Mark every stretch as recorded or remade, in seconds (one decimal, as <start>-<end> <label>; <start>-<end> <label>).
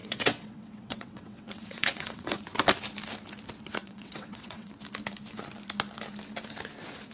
0.0-2.4 remade; 2.4-3.8 recorded; 3.8-4.7 remade; 4.7-7.1 recorded